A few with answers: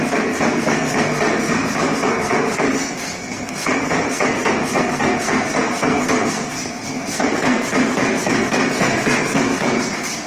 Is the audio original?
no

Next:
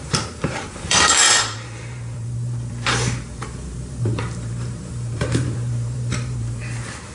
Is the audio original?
no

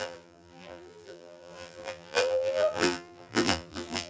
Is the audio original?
no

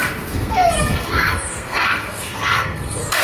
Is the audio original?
no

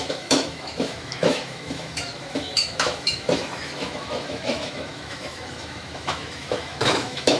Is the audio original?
no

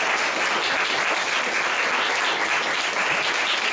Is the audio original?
yes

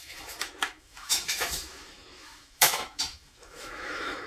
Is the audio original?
no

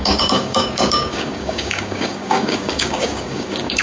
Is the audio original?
no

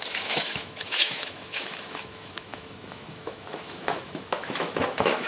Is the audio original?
no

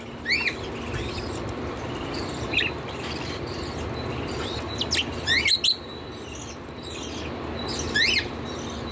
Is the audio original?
yes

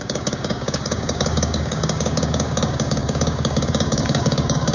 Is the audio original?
no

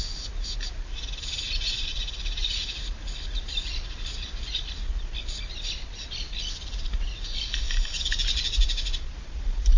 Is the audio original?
yes